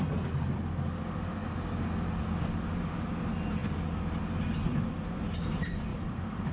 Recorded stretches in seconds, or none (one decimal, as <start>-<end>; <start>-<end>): 0.0-5.9